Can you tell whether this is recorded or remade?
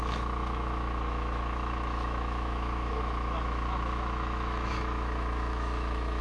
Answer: remade